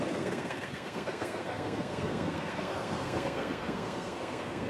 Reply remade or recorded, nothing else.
remade